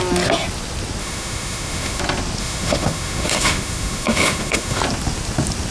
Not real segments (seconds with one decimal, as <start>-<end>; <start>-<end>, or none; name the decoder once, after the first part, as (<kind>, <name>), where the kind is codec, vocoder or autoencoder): 1.0-2.0 (autoencoder, DAC-VAE); 2.4-4.8